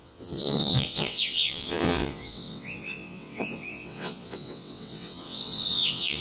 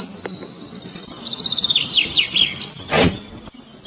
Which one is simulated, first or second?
first